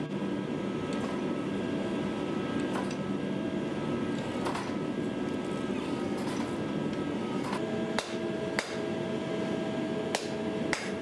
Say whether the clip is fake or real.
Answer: real